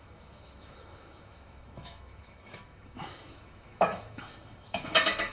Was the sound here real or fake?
fake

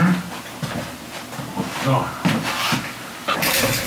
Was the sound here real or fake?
real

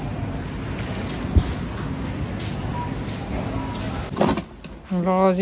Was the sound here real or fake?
real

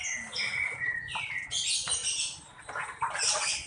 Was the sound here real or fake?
real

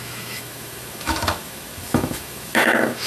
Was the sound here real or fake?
fake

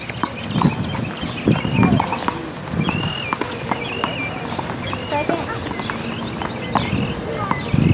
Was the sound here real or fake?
real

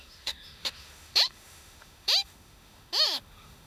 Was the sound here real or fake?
fake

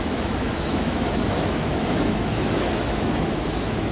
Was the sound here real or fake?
fake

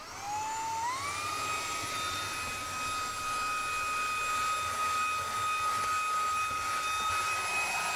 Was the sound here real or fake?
real